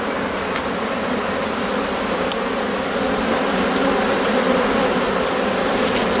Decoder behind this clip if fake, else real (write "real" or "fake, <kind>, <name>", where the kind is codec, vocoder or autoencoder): real